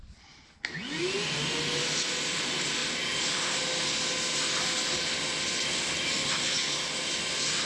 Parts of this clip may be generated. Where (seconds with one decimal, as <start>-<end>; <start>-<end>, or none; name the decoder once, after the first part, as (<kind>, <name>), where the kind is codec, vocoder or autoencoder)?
none